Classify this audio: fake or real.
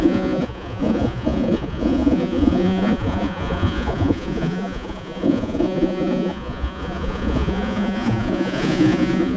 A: fake